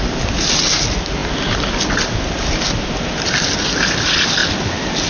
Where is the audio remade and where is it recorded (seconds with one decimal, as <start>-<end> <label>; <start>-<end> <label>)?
0.0-5.1 recorded